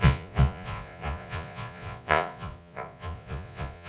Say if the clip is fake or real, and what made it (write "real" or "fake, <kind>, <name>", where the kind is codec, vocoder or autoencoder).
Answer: fake, vocoder, Vocos